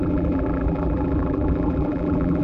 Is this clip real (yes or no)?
no